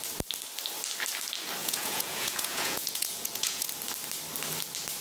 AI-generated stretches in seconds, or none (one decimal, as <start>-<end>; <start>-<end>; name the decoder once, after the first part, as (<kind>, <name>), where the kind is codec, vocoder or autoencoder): 1.6-3.7 (vocoder, Vocos)